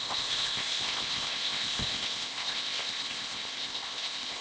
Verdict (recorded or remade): remade